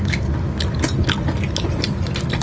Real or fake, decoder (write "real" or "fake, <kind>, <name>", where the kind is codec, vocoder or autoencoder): real